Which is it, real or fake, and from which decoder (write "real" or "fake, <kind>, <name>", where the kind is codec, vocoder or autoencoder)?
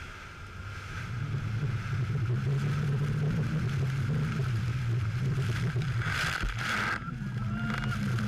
real